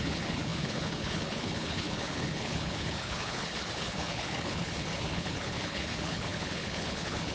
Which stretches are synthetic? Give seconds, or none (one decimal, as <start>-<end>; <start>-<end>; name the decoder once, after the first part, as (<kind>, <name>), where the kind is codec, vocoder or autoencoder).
0.0-7.3 (codec, HILCodec)